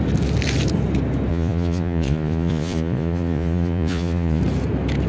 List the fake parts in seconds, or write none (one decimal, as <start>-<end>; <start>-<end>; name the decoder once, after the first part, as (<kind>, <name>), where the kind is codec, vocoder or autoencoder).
1.3-4.4 (vocoder, Vocos)